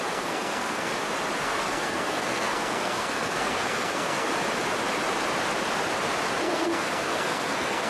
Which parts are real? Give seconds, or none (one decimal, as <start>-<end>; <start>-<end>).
0.9-1.4; 4.3-6.4